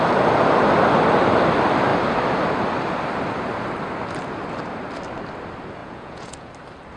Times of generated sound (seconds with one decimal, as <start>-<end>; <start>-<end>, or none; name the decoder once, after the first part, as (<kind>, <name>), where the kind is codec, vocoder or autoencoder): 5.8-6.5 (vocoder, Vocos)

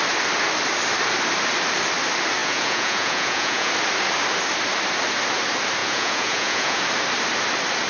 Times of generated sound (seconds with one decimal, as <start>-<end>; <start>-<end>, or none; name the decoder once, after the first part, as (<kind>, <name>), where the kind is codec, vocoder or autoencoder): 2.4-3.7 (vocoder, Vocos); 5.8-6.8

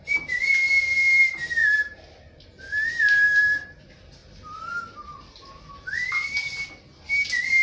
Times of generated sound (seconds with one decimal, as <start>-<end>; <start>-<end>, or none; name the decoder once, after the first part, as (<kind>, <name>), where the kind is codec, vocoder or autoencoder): none

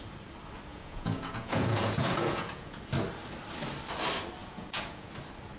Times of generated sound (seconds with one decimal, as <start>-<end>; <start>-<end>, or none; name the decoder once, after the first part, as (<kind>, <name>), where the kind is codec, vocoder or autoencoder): 0.7-2.8 (vocoder, Vocos); 4.4-5.1

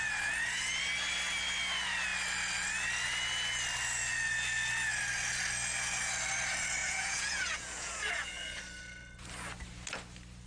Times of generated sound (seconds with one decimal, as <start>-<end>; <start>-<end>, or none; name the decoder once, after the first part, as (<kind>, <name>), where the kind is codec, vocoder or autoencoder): 6.8-8.6 (vocoder, Vocos)

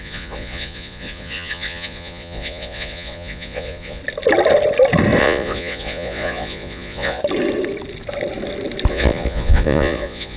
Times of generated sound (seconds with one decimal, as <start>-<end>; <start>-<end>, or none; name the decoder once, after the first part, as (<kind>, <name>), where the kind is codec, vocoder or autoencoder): 0.0-4.0 (vocoder, Vocos); 5.2-7.2; 8.9-10.4

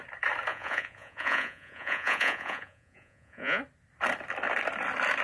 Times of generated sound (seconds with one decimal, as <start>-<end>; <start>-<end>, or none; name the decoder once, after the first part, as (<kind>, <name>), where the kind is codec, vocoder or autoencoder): 0.5-3.6 (vocoder, Vocos)

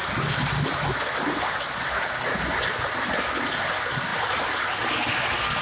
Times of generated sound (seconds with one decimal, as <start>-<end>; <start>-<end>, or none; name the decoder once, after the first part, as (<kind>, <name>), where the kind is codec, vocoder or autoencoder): none